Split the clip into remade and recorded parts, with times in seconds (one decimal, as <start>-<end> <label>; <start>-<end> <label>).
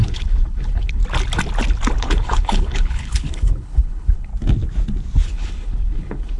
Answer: 0.0-1.0 remade; 1.0-2.0 recorded; 2.0-4.3 remade; 4.3-5.3 recorded; 5.3-6.4 remade